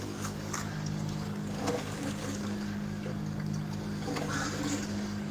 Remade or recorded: remade